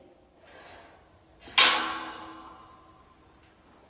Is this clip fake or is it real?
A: real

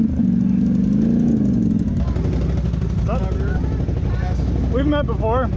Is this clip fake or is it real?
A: real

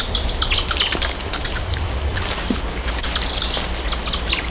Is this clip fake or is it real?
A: real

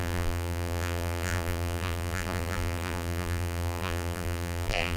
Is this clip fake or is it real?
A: fake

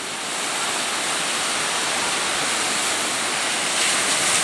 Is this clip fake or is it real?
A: real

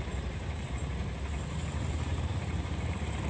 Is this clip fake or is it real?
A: fake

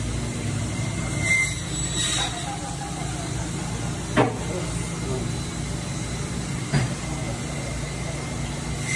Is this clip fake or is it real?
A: real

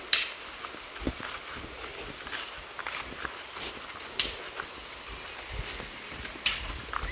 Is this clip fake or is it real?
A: real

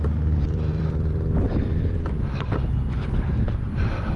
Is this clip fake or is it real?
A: fake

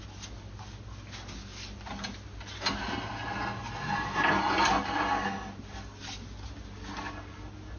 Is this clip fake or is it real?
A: real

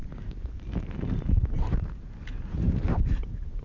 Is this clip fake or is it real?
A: fake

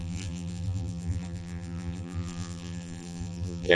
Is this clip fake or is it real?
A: fake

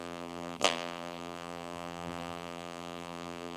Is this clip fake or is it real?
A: fake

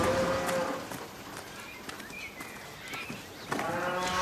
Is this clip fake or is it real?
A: real